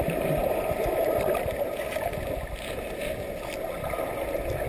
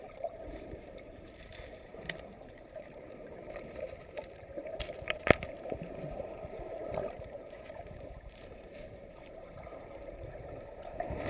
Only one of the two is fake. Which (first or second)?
second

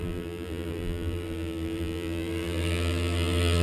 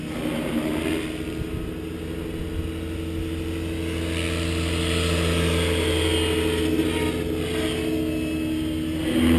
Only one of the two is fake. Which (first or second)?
first